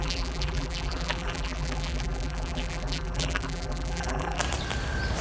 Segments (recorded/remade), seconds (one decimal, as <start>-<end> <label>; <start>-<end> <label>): 0.0-4.4 remade; 4.4-5.2 recorded